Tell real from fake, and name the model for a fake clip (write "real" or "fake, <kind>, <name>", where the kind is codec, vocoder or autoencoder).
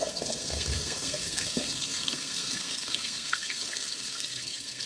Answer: fake, codec, SNAC